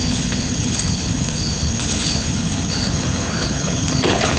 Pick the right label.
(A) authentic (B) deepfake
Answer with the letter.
B